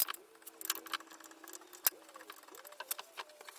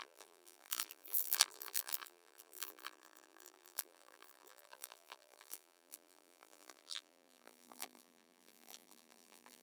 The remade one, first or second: second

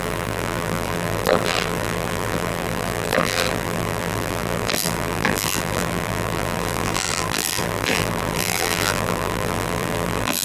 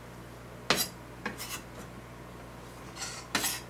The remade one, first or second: first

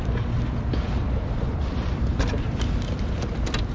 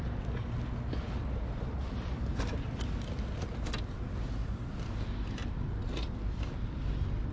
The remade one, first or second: first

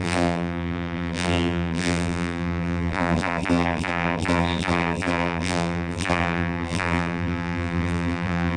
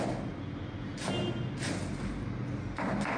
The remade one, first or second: first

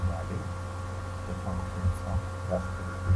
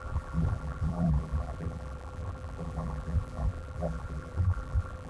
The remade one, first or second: second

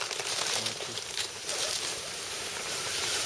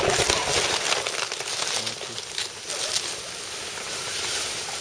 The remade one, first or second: first